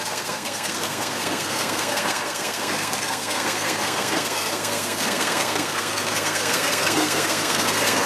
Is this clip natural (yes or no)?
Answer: no